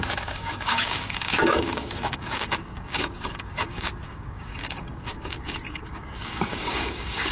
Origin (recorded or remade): remade